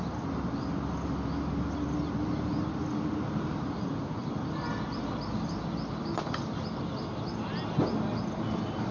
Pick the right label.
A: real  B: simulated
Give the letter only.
A